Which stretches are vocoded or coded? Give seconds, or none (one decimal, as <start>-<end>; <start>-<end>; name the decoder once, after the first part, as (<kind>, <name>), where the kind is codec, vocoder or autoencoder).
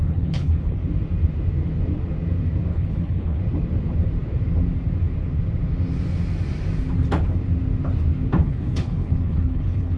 0.0-0.8 (codec, HILCodec); 2.7-3.4; 8.4-10.0